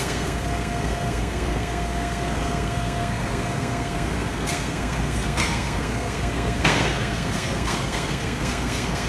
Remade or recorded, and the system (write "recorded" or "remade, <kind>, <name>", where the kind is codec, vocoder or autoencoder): remade, codec, SNAC